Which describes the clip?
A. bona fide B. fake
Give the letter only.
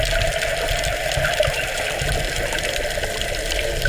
B